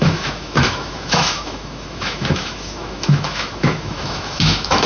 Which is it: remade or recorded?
remade